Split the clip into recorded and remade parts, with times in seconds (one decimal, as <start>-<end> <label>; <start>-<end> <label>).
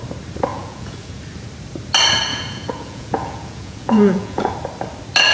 0.0-0.5 recorded; 0.5-1.2 remade; 1.2-2.3 recorded; 2.3-4.5 remade; 4.5-5.3 recorded